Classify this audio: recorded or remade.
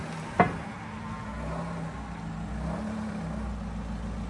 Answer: recorded